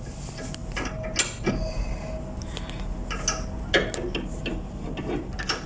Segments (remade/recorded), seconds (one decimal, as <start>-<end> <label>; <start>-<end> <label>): 0.0-5.7 recorded